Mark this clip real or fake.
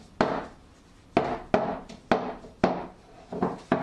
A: real